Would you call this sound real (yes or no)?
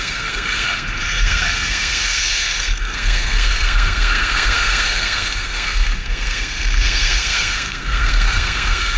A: no